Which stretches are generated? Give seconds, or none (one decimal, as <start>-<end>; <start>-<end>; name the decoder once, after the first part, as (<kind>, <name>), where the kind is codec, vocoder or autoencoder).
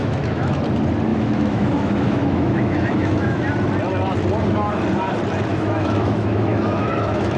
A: 0.0-0.6 (autoencoder, DAC-VAE); 1.1-3.5; 5.5-7.4